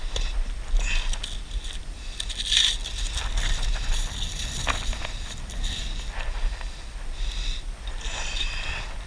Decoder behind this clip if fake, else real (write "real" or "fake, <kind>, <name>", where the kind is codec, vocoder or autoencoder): real